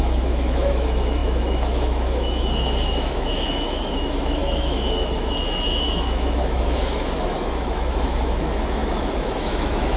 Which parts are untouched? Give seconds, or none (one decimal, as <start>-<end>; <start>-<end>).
none